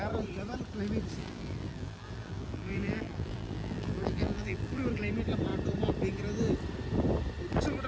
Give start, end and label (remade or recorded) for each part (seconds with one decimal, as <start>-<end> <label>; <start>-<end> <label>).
0.0-1.2 recorded; 1.2-4.8 remade; 4.8-7.9 recorded